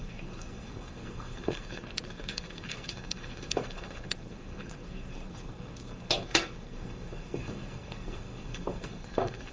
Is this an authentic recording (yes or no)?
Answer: no